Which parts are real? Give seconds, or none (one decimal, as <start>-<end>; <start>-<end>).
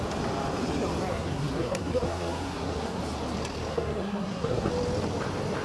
0.0-1.1; 3.0-3.7; 4.7-5.6